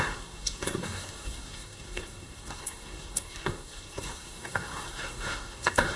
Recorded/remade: remade